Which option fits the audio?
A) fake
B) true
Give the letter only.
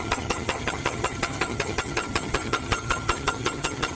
A